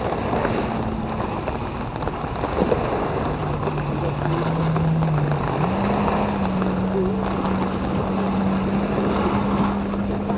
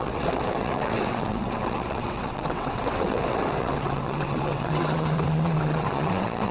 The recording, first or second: first